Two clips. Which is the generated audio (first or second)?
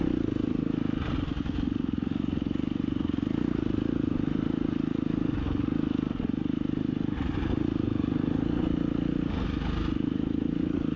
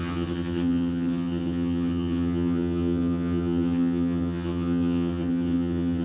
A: second